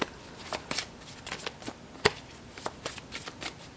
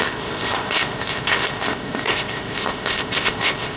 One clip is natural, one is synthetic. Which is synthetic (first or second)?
second